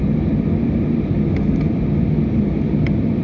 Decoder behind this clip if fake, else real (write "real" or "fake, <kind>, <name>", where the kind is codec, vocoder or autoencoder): real